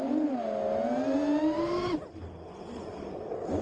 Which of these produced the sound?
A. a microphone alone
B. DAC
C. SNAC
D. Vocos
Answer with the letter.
A